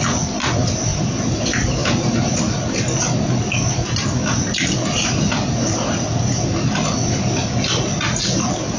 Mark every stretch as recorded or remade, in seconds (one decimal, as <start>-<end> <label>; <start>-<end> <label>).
0.0-0.9 recorded; 0.9-1.4 remade; 1.4-1.8 recorded; 1.8-2.4 remade; 2.4-8.8 recorded